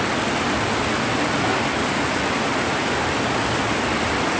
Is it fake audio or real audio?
real